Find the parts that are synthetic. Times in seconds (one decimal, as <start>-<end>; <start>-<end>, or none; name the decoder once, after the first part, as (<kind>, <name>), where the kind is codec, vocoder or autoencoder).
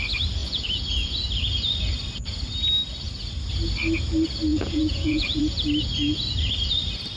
0.4-1.2 (vocoder, Vocos); 4.5-5.4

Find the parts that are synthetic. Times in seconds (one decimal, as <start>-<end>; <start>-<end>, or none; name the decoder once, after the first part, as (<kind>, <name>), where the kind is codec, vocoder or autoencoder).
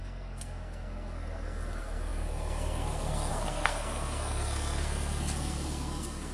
0.0-6.3 (codec, SNAC)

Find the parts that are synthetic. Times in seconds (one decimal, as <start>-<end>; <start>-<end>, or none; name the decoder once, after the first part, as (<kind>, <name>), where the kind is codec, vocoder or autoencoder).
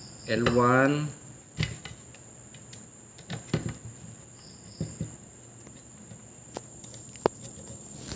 0.0-1.8 (vocoder, BigVGAN v2); 3.1-8.2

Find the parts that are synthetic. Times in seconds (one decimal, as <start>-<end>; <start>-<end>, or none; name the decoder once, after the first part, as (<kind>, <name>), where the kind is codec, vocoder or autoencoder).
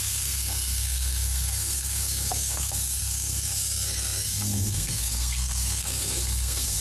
0.0-6.8 (codec, SNAC)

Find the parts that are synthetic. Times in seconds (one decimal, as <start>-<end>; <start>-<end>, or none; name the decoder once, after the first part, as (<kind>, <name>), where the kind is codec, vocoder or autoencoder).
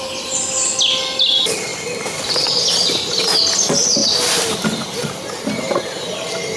1.7-2.6 (vocoder, BigVGAN v2); 4.0-4.6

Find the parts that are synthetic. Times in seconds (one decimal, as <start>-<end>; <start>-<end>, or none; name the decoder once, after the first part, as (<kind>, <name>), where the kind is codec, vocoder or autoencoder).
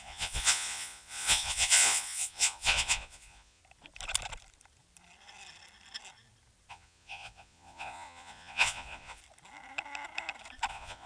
0.0-3.6 (vocoder, Vocos); 6.7-9.2; 10.7-11.1